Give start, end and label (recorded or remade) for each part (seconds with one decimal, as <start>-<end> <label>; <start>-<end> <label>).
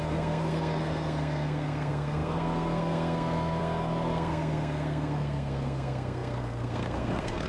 0.0-7.5 remade